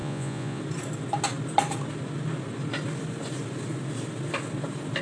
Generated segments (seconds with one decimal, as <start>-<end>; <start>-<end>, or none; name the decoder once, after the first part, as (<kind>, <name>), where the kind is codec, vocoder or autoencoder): 0.0-0.6 (vocoder, Vocos)

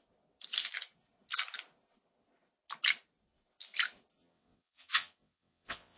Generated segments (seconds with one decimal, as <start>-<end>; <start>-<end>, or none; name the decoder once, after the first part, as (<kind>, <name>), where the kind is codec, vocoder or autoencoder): 4.2-6.0 (vocoder, WaveNeXt)

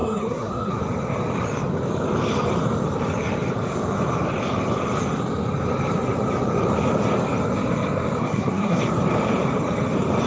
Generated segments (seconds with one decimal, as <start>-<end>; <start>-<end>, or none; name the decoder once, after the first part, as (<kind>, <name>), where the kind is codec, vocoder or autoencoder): 0.0-0.8 (codec, SNAC); 8.2-8.8

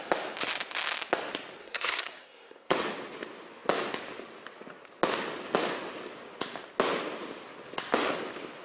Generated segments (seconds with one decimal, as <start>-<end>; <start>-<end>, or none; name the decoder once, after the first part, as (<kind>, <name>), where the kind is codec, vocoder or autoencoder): 1.6-2.7 (codec, SNAC)